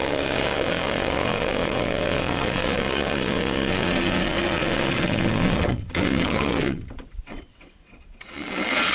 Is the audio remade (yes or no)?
yes